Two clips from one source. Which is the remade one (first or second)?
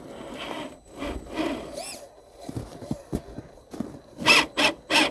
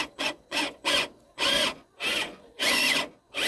second